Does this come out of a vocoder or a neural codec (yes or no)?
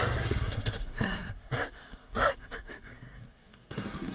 yes